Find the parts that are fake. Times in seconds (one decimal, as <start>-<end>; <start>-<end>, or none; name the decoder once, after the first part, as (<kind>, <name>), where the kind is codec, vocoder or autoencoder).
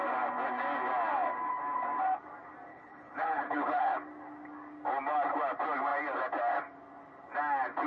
2.7-3.8 (codec, HILCodec)